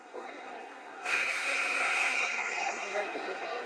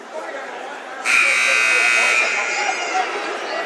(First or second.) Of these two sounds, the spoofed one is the first